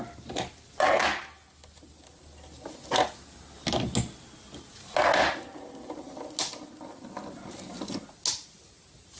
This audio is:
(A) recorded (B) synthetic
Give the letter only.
A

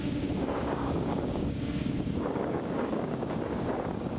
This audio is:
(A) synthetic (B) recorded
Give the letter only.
A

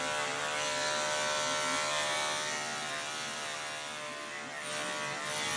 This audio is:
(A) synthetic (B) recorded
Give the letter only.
B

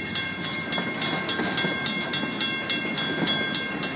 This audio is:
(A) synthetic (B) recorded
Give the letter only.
B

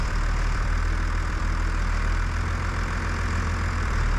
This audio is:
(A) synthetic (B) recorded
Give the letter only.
A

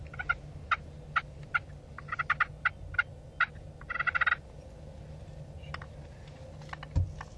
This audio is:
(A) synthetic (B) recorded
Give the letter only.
B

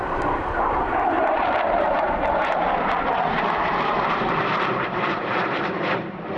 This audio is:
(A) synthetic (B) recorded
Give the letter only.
A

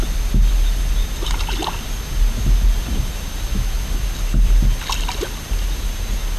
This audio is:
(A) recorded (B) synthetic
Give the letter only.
A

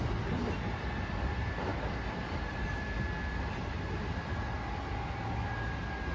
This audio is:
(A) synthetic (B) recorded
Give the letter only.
B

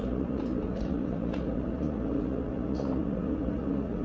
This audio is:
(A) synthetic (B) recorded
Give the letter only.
A